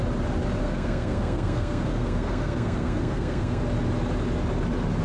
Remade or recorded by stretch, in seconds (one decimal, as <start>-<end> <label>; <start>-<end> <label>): 0.0-0.6 recorded; 0.6-3.6 remade; 3.6-5.0 recorded